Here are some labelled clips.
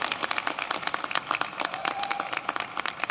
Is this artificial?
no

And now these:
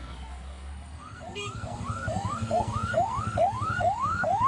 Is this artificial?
yes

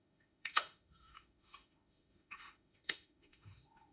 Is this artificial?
yes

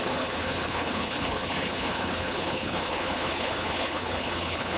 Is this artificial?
yes